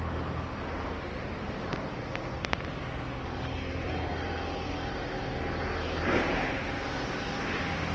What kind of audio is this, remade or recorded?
recorded